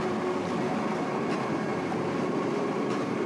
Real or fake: real